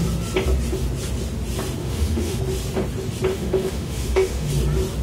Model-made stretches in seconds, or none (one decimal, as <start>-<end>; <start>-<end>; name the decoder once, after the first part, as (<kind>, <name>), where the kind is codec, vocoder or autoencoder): 1.8-2.4 (autoencoder, DAC-VAE); 3.3-4.5